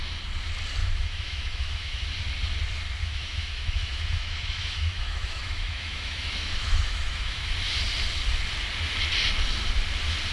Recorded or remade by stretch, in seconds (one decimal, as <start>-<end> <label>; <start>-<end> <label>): 0.0-0.8 recorded; 0.8-2.0 remade; 2.0-3.0 recorded; 3.0-7.5 remade; 7.5-10.3 recorded